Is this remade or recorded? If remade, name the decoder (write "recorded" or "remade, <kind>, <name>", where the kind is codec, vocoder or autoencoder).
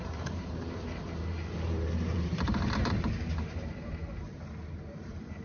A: remade, vocoder, BigVGAN v2